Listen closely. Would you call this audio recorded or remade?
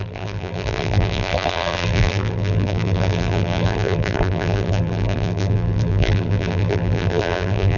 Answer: remade